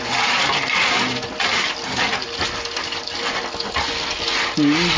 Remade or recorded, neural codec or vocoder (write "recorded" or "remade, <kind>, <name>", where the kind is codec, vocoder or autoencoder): recorded